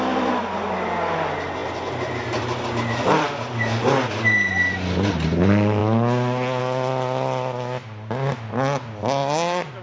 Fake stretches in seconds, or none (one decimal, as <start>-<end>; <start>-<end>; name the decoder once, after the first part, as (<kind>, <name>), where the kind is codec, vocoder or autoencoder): none